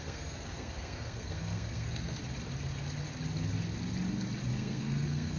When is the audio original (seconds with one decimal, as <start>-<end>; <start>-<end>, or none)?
2.2-4.5